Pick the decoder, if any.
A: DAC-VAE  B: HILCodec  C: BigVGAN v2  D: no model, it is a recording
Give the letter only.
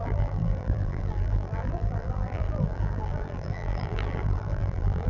C